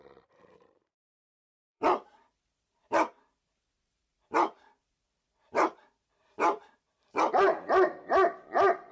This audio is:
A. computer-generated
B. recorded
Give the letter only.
A